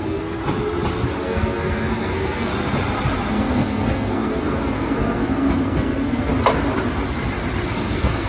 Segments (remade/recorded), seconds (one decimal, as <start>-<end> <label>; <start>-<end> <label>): 0.0-0.4 remade; 0.4-1.2 recorded; 1.2-2.5 remade; 2.5-3.3 recorded; 3.3-6.3 remade; 6.3-7.7 recorded; 7.7-8.3 remade